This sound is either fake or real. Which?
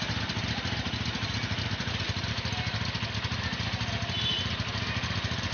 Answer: real